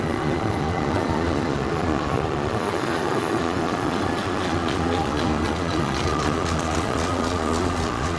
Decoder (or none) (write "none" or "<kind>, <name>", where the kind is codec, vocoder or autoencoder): vocoder, Vocos